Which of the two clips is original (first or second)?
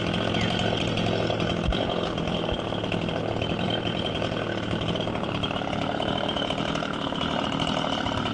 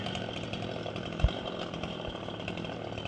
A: first